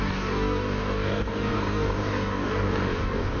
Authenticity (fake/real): fake